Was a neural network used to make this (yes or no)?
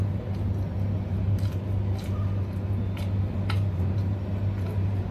no